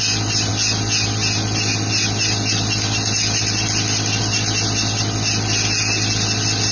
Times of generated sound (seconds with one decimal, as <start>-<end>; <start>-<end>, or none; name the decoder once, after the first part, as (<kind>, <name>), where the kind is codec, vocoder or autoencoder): none